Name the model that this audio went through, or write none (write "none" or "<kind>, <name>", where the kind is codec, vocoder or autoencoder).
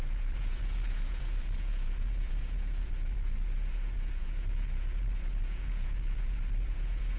vocoder, Vocos